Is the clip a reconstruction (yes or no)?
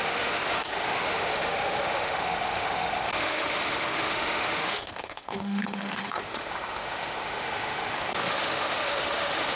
yes